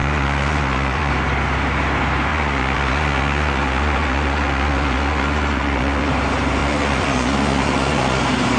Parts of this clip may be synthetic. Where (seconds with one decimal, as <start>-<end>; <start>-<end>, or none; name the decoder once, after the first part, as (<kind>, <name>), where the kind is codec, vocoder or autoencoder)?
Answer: 0.0-1.1 (vocoder, Vocos); 2.3-6.1; 6.6-8.2